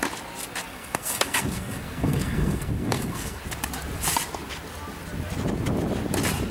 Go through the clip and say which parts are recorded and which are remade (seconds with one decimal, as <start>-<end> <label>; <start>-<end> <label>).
0.0-0.7 recorded; 0.7-3.4 remade; 3.4-6.5 recorded